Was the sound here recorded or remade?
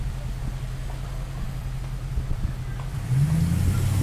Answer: recorded